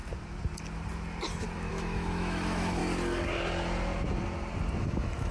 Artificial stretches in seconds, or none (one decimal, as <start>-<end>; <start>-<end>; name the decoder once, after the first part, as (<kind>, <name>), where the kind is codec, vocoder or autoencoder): 1.7-2.8 (autoencoder, DAC-VAE); 4.8-5.3